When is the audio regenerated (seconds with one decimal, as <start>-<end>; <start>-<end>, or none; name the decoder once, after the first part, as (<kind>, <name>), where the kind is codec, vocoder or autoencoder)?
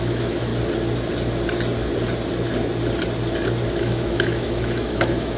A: 0.0-0.5 (autoencoder, DAC-VAE); 3.7-5.4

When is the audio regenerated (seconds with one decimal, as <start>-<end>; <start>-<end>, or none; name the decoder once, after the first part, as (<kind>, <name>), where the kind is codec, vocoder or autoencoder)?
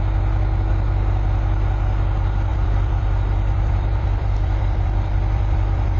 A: 2.5-6.0 (vocoder, BigVGAN v2)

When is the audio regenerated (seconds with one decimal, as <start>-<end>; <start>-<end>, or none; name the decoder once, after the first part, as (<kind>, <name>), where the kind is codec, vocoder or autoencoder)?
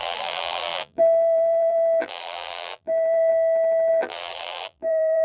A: 0.0-3.3 (vocoder, BigVGAN v2); 3.9-5.2